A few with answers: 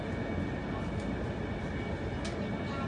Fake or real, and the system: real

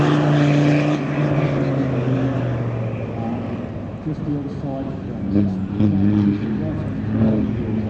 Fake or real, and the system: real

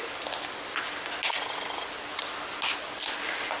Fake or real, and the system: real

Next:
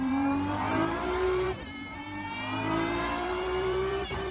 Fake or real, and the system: fake, vocoder, BigVGAN v2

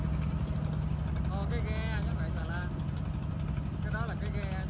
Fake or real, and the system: real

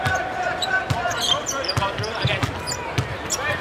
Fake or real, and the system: real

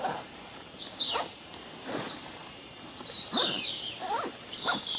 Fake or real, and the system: fake, vocoder, BigVGAN v2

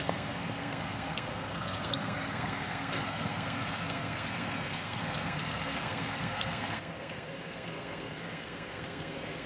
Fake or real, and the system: fake, codec, SNAC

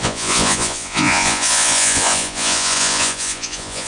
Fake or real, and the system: fake, vocoder, Vocos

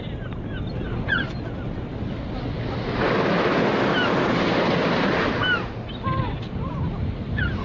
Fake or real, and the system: real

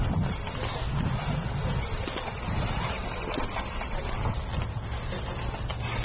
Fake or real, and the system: real